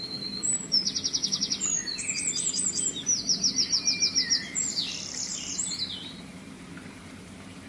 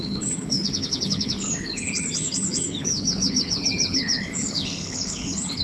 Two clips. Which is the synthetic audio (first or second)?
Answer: second